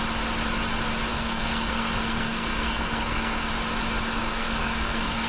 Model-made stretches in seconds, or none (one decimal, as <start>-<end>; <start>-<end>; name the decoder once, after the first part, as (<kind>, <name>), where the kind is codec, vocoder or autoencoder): 1.1-3.5 (codec, SNAC); 4.1-5.3